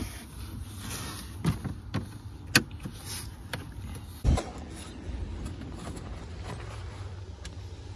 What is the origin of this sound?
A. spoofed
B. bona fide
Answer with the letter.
B